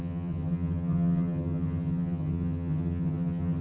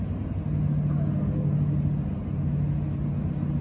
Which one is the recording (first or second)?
second